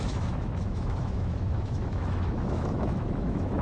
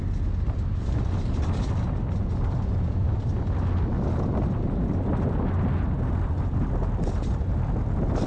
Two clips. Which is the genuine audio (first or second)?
second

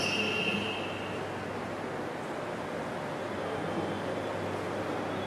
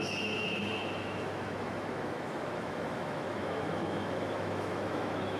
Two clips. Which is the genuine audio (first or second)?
first